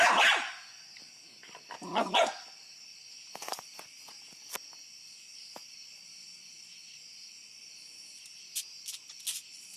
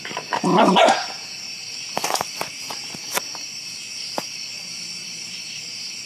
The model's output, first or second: second